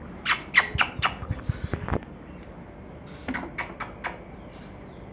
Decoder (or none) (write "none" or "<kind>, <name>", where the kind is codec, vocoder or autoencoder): none